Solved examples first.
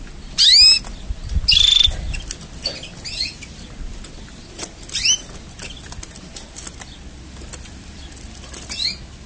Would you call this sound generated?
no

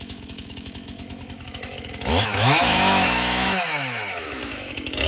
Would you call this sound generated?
yes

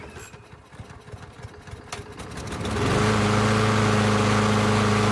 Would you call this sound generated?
no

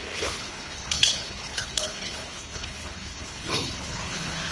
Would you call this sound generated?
yes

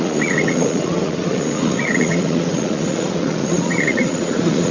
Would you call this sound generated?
yes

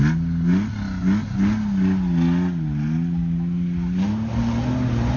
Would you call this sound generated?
no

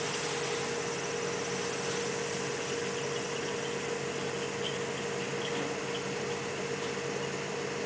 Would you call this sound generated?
no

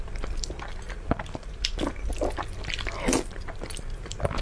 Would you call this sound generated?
no